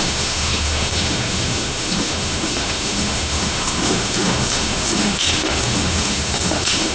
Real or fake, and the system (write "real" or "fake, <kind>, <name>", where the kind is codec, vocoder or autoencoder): fake, autoencoder, DAC-VAE